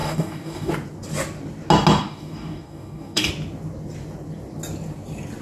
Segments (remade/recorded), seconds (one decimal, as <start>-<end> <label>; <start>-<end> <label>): 0.0-0.7 remade; 0.7-2.0 recorded; 2.0-3.3 remade; 3.3-5.4 recorded